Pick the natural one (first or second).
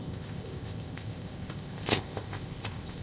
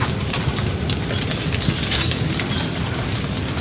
second